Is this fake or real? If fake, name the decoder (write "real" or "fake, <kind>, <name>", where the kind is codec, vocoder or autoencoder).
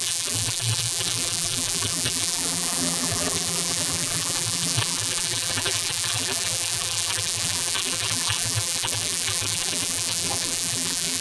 fake, vocoder, BigVGAN v2